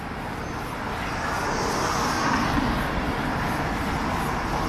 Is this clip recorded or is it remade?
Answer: recorded